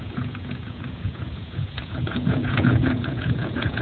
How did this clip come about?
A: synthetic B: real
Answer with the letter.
A